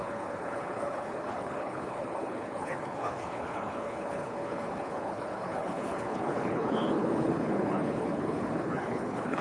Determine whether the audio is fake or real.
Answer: fake